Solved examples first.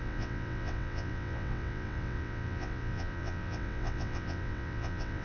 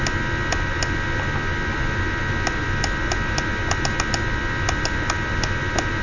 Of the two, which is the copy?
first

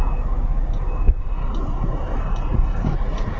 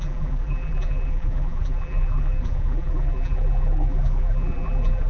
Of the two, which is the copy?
second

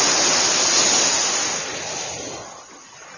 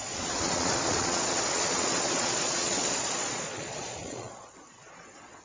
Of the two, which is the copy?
second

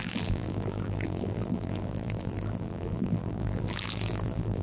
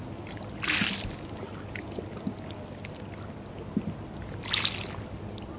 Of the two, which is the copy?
first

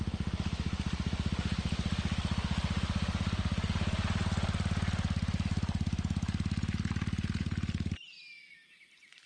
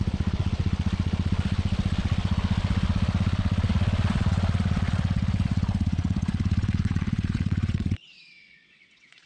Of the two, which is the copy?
second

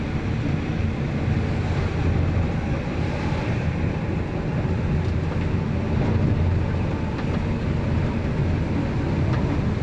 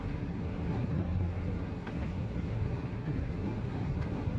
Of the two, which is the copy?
second